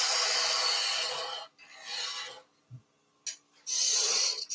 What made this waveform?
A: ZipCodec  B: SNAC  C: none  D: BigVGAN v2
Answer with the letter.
C